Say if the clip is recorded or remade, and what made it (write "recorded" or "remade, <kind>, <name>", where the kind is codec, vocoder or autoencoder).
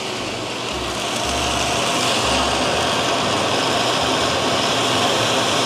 recorded